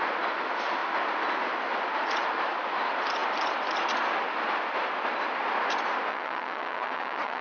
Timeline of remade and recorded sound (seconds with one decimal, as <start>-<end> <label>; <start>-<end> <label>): 0.0-6.1 recorded; 6.1-7.4 remade